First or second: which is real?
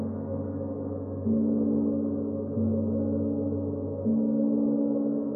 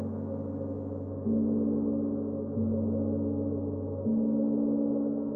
second